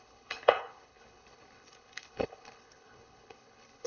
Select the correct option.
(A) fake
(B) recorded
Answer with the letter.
A